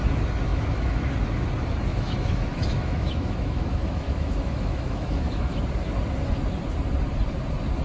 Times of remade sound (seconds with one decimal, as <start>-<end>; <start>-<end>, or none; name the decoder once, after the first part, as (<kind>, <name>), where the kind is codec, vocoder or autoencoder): 0.5-1.1 (autoencoder, DAC-VAE); 1.9-5.6

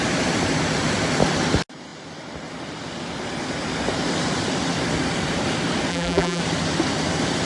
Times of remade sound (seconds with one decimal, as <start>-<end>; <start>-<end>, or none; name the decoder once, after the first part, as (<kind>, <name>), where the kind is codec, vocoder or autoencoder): 5.9-6.4 (vocoder, BigVGAN v2)

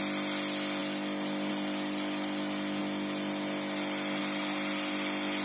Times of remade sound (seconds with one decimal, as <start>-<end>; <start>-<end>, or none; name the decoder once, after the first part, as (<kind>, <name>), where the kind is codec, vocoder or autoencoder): none

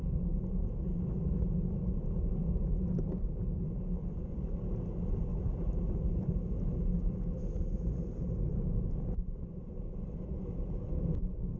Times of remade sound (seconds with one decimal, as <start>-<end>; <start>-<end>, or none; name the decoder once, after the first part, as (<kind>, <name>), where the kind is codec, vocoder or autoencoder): 5.3-6.4 (vocoder, BigVGAN v2)

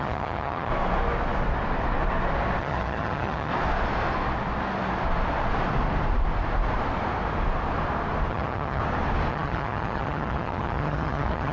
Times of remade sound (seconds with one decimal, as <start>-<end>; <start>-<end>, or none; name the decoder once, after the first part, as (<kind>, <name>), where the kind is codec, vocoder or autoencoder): 0.0-0.7 (vocoder, HiFi-GAN); 2.6-3.5; 8.3-8.8; 9.3-11.5

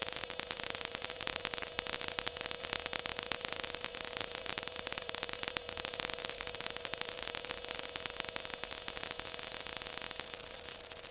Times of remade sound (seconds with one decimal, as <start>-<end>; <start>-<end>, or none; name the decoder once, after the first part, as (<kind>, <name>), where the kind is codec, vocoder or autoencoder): 0.0-1.4 (vocoder, BigVGAN v2); 3.1-7.5

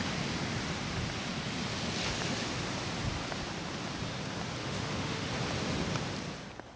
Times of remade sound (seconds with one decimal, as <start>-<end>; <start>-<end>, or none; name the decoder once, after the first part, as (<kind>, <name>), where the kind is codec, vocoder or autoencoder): 4.6-5.3 (autoencoder, DAC-VAE)